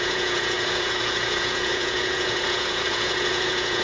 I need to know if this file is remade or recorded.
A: remade